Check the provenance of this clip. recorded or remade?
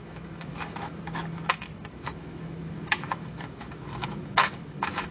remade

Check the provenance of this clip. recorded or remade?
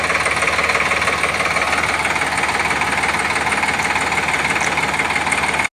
recorded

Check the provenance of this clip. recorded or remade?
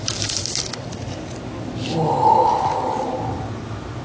recorded